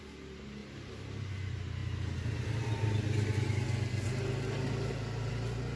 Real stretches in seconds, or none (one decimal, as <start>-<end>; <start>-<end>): 0.0-5.8